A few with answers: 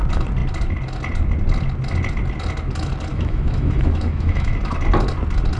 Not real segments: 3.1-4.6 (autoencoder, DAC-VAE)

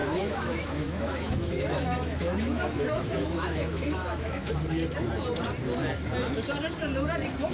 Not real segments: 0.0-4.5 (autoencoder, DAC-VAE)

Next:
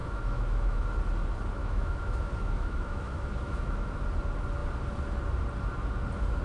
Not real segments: 0.0-0.9 (autoencoder, DAC-VAE); 1.6-4.0

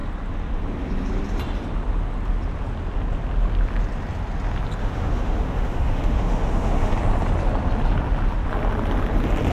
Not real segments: 4.8-6.9 (autoencoder, DAC-VAE)

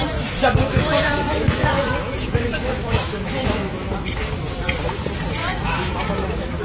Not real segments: 0.4-3.8 (autoencoder, DAC-VAE); 5.4-6.6

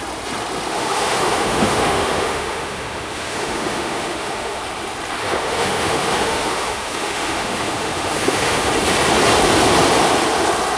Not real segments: 0.7-4.6 (autoencoder, DAC-VAE); 5.2-8.7

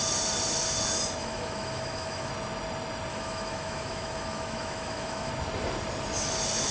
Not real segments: 1.2-2.3 (autoencoder, DAC-VAE); 3.1-5.3